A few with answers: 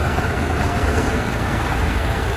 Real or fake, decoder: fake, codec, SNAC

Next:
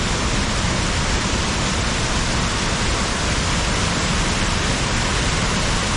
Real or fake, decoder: real